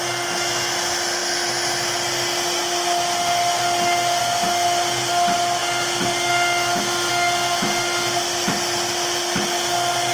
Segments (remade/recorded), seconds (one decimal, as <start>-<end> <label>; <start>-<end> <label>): 0.0-10.1 recorded